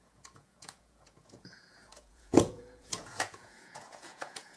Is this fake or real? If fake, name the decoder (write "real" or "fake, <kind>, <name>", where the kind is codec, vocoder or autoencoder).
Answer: fake, vocoder, Vocos